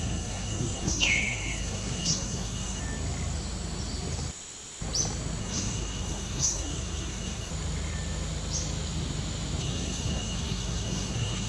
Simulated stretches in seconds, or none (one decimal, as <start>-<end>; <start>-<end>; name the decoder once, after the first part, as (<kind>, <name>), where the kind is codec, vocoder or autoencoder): 0.0-2.8 (codec, SNAC); 5.4-7.5; 9.6-11.5